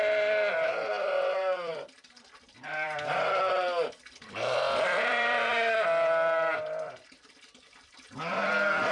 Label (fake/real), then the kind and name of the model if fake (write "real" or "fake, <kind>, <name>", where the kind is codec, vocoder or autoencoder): fake, vocoder, BigVGAN v2